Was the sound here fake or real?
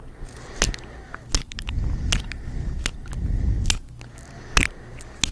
real